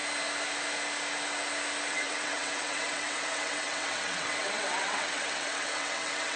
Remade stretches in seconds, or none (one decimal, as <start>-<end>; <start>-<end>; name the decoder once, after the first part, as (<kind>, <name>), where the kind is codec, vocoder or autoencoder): 1.9-6.4 (vocoder, WaveNeXt)

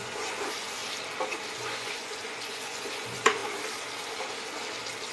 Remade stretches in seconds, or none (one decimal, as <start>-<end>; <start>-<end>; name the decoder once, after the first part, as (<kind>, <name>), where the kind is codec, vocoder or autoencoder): 0.0-0.8 (vocoder, Vocos); 1.5-3.4

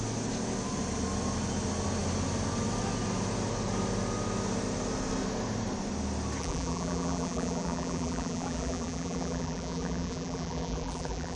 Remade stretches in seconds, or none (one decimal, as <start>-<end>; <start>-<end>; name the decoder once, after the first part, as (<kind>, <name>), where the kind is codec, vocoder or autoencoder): 6.4-11.4 (vocoder, BigVGAN v2)

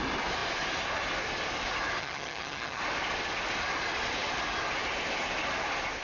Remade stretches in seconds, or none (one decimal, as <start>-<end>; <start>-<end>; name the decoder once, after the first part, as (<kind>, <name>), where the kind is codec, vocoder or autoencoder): 2.0-2.8 (vocoder, HiFi-GAN)

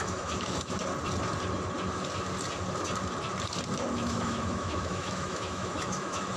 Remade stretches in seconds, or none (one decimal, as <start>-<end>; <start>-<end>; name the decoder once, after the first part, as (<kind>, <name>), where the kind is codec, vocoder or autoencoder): 0.0-0.8 (autoencoder, DAC-VAE); 3.9-6.4

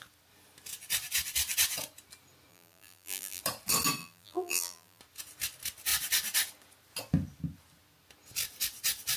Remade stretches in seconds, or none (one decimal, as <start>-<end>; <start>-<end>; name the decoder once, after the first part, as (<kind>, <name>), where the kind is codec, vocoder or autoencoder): 2.5-3.4 (vocoder, BigVGAN v2); 4.0-5.0

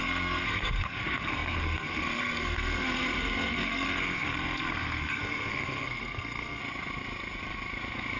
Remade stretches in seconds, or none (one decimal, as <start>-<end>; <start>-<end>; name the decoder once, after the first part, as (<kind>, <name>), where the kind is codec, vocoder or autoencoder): 0.0-6.6 (codec, SNAC)